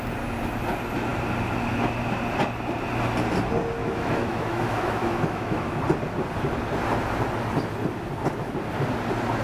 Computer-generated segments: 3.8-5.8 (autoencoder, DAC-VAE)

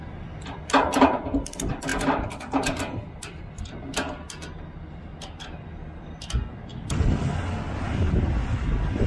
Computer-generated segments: 1.9-3.5 (vocoder, BigVGAN v2); 5.1-5.7

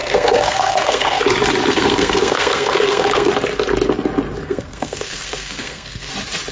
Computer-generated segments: 0.0-1.2 (codec, SNAC); 1.7-3.3; 4.4-6.1

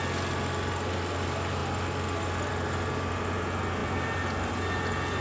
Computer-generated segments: 3.8-4.5 (vocoder, BigVGAN v2)